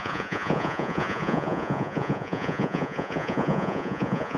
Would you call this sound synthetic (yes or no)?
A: yes